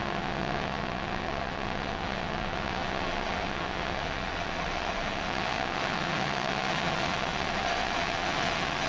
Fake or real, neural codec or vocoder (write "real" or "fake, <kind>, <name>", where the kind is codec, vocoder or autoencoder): fake, vocoder, WaveNeXt